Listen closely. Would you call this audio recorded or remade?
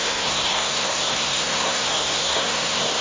remade